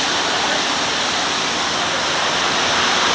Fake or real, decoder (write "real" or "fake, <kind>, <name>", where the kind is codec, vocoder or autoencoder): real